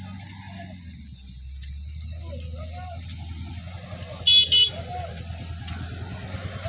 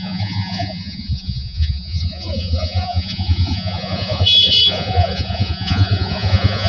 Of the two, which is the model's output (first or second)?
second